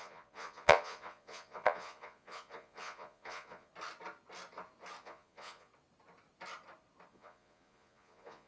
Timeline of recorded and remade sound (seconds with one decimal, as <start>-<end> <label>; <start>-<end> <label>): 0.0-3.7 remade; 3.7-5.0 recorded; 5.0-5.7 remade; 5.7-7.1 recorded; 7.1-8.5 remade